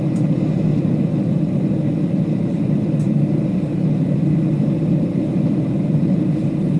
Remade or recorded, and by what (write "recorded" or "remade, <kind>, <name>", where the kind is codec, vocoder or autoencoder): recorded